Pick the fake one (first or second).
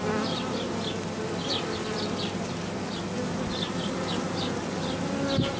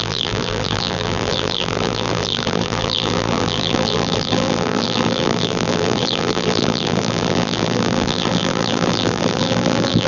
second